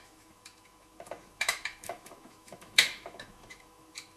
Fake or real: fake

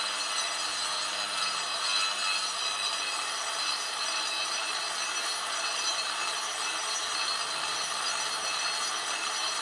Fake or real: real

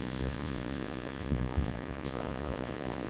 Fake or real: fake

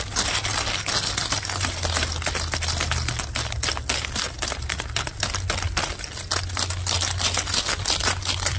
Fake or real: real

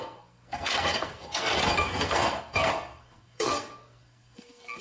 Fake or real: fake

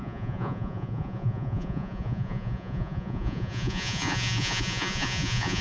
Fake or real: fake